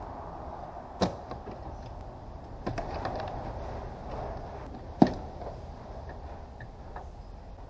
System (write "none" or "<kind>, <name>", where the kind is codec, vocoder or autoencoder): none